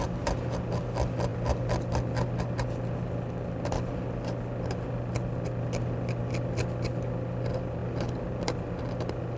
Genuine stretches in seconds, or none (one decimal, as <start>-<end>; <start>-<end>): 0.0-9.4